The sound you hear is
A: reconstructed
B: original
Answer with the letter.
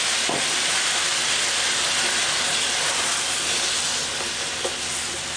B